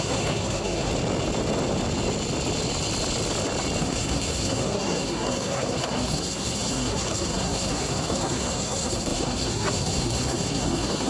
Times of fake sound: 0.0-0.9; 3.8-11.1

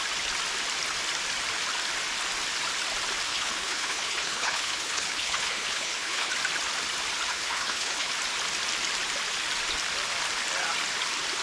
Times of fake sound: 3.3-6.3; 7.3-8.1

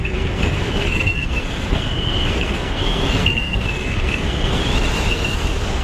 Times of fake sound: 0.0-4.6; 5.1-5.8

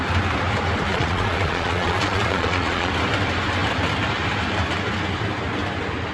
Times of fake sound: 0.9-2.9

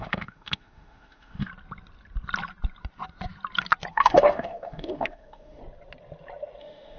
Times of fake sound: 0.0-1.5; 3.9-5.6; 6.6-7.0

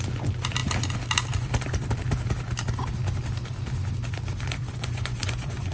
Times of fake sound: 4.7-5.7